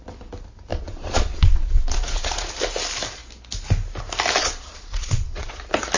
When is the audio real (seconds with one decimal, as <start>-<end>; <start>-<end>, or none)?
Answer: 0.0-0.7; 2.5-4.4; 5.6-6.0